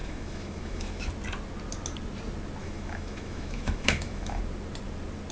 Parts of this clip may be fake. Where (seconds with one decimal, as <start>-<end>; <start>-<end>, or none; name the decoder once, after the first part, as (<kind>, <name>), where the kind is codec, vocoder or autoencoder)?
0.0-1.1 (autoencoder, DAC-VAE); 2.6-4.4